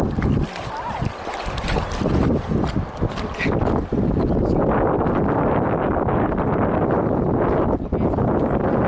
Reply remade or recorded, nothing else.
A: recorded